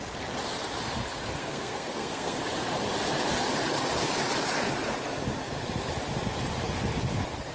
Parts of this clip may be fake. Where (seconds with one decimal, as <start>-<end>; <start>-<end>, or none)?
1.4-2.4